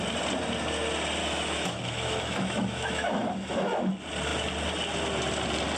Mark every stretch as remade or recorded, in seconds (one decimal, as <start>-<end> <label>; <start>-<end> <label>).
0.0-1.2 recorded; 1.2-3.9 remade; 3.9-5.8 recorded